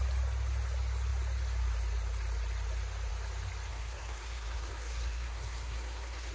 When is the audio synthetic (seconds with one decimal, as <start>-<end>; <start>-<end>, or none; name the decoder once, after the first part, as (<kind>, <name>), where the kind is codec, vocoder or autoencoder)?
3.7-6.3 (codec, SNAC)